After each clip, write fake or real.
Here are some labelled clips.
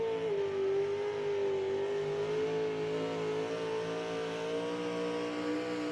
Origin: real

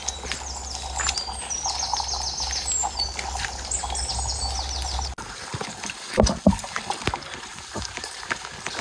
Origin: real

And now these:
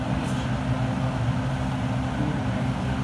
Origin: real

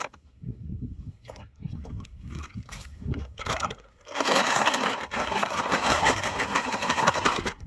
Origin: fake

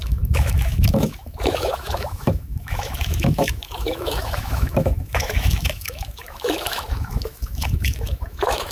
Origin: fake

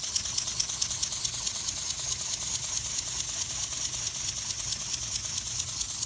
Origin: real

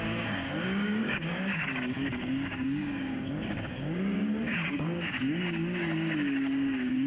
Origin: fake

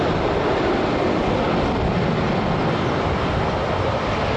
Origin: real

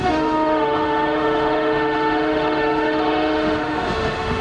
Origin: fake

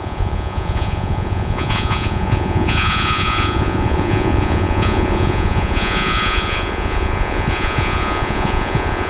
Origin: fake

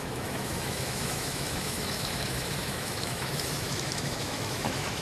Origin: fake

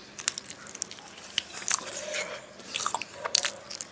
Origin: real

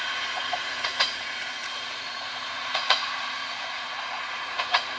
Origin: fake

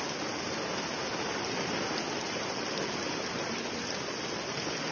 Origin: real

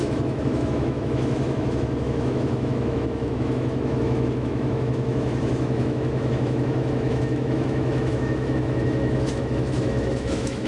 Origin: fake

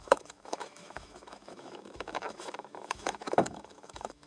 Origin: fake